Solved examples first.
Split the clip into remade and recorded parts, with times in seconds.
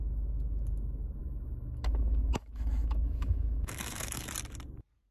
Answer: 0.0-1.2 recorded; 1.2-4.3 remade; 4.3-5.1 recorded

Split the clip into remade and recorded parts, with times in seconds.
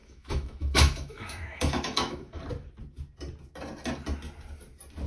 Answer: 0.0-2.4 remade; 2.4-5.1 recorded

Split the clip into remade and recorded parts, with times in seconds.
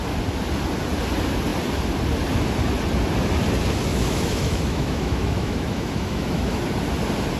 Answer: 0.0-3.9 recorded; 3.9-6.6 remade; 6.6-7.4 recorded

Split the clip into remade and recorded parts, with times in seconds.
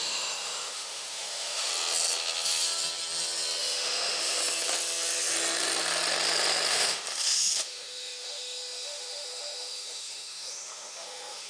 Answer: 0.0-1.7 remade; 1.7-3.6 recorded; 3.6-4.4 remade; 4.4-6.7 recorded; 6.7-11.5 remade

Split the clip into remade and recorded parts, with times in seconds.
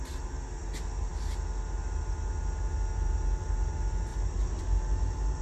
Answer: 0.0-5.4 recorded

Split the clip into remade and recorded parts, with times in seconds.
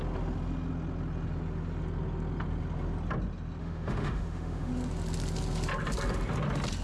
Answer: 0.0-3.6 recorded; 3.6-4.7 remade; 4.7-6.8 recorded